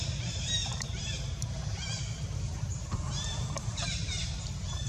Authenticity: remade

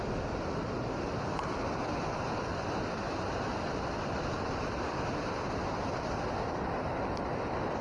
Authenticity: recorded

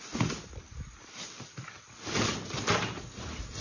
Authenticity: recorded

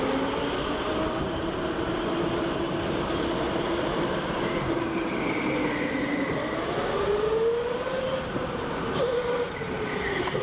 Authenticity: recorded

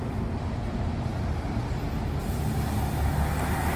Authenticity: recorded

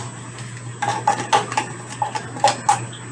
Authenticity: recorded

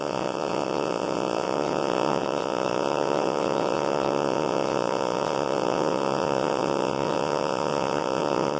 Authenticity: remade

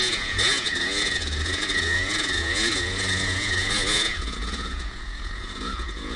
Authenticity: remade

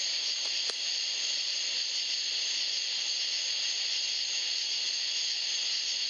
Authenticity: recorded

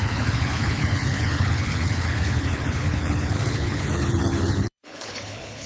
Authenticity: remade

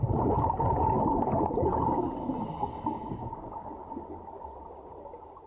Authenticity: recorded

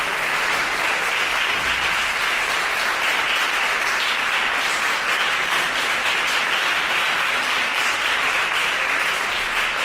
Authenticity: recorded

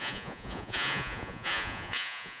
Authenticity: remade